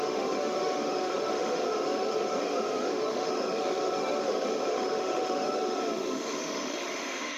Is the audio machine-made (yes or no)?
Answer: yes